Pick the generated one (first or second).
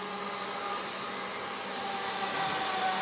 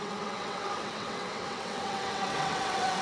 second